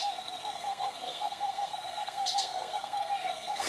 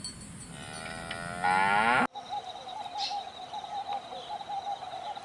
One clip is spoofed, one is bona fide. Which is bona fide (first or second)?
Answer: second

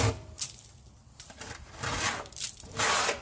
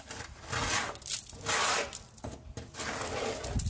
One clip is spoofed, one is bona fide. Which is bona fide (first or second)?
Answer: second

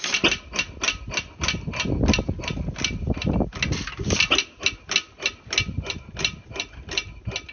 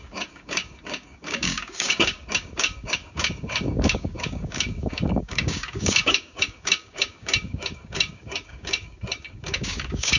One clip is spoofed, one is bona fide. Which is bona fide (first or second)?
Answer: first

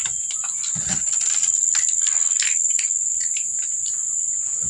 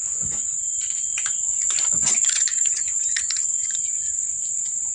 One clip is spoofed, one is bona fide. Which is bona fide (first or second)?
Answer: first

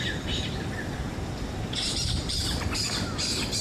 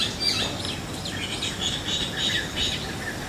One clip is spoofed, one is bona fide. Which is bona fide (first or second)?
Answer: second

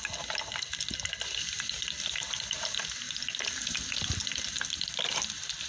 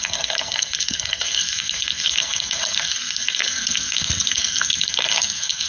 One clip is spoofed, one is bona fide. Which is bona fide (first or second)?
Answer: first